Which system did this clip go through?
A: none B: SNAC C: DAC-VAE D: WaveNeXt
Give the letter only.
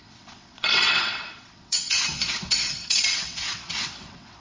D